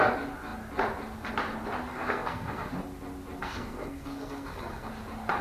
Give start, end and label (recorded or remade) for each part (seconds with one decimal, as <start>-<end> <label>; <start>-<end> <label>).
0.0-1.9 recorded; 1.9-2.7 remade; 2.7-3.4 recorded; 3.4-4.9 remade; 4.9-5.4 recorded